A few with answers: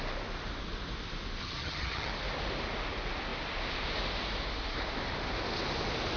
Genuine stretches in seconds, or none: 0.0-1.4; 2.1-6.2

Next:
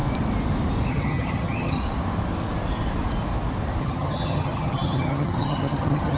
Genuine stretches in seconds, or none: 0.0-0.9; 1.8-3.8

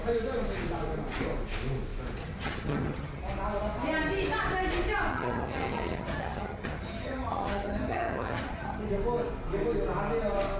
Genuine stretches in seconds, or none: 0.0-2.2; 3.2-5.1; 8.9-10.6

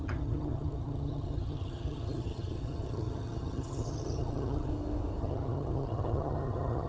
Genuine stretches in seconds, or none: 4.7-5.2

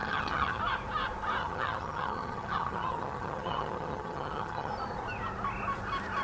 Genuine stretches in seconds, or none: 0.6-1.4; 4.7-6.2

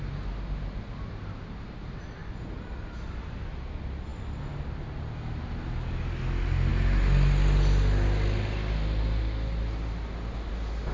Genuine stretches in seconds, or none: 0.0-10.9